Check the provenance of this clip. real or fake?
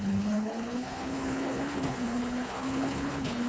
fake